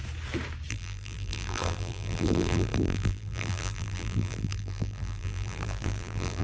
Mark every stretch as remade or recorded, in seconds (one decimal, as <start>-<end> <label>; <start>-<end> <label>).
0.0-0.7 recorded; 0.7-6.4 remade